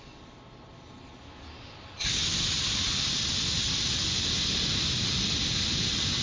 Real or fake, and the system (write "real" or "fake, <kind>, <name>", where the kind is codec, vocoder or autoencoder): real